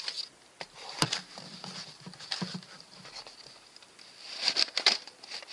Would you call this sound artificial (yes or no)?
no